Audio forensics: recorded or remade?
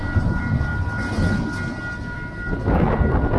recorded